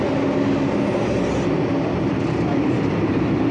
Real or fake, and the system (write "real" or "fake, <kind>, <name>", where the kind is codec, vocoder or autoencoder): real